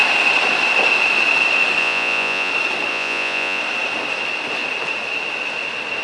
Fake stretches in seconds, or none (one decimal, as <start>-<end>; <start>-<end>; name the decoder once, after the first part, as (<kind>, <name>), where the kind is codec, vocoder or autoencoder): 1.8-2.5 (vocoder, Vocos); 2.9-3.6